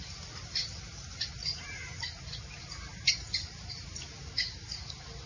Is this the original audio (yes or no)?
yes